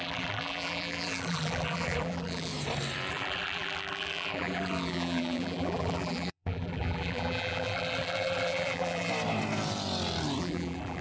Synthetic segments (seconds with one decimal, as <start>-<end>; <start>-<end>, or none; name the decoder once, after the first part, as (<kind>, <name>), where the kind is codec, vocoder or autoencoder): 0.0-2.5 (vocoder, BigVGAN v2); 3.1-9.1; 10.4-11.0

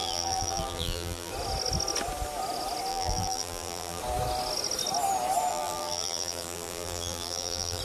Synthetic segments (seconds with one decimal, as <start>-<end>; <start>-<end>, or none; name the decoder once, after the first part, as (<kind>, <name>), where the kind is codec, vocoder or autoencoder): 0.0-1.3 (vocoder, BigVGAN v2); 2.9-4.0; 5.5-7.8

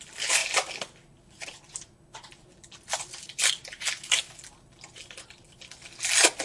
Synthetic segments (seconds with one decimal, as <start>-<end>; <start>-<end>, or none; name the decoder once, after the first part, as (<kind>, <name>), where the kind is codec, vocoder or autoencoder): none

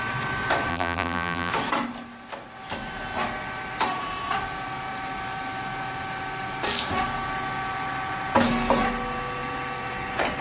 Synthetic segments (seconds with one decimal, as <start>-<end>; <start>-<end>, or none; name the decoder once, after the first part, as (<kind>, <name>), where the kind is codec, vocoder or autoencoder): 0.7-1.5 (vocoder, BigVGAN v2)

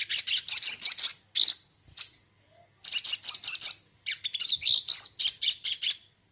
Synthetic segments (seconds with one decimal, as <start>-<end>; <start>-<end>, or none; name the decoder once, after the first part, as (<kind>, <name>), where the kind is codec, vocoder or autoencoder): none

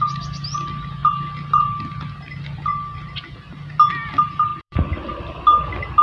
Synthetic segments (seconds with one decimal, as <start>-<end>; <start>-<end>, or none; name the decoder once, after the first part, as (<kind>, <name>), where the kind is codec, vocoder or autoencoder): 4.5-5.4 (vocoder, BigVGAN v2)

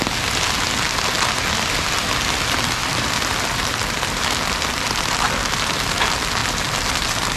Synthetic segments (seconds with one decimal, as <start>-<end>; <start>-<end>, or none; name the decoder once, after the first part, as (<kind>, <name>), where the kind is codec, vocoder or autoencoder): 2.8-4.2 (vocoder, BigVGAN v2); 6.4-7.4